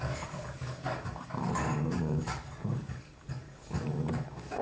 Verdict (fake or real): fake